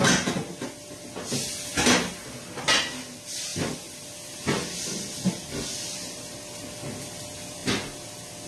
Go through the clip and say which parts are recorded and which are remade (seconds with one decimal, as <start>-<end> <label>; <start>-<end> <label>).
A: 0.0-8.5 recorded